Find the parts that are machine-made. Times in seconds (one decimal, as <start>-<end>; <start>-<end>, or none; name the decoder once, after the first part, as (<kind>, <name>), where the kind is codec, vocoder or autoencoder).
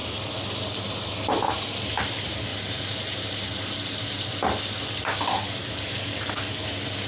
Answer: none